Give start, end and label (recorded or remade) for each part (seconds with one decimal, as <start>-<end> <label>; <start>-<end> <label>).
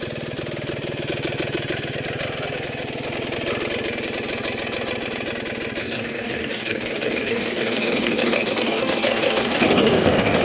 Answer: 0.0-5.8 recorded; 5.8-10.4 remade